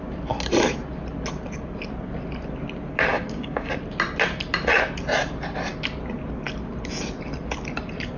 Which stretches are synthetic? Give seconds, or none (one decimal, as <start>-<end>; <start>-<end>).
3.1-3.7